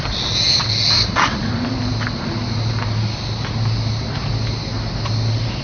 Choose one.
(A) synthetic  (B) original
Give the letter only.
B